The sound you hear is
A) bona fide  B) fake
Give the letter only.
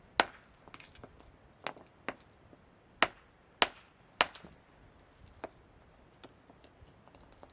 A